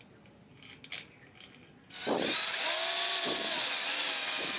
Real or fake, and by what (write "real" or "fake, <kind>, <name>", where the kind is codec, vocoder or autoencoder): real